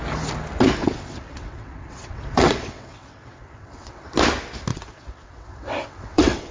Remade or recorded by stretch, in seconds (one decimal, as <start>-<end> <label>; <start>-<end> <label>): 0.0-0.8 recorded; 0.8-4.1 remade; 4.1-4.7 recorded; 4.7-6.5 remade